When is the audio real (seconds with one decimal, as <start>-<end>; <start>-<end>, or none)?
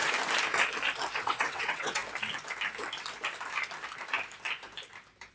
0.0-1.2; 2.0-5.3